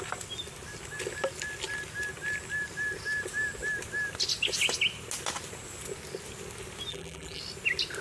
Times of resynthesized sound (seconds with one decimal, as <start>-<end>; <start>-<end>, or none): 6.9-7.4